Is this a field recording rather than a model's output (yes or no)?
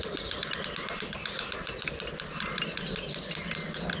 yes